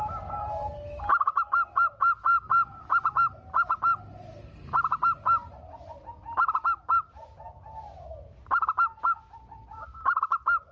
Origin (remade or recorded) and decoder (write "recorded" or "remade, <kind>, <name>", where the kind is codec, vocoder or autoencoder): recorded